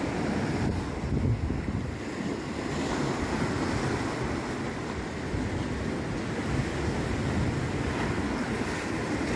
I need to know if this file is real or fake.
real